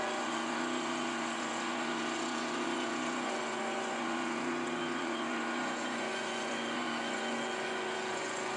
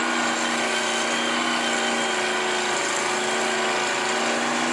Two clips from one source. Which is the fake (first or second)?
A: first